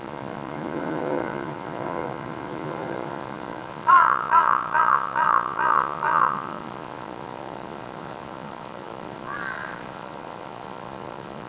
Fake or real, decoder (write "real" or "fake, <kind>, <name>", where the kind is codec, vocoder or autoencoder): fake, vocoder, Vocos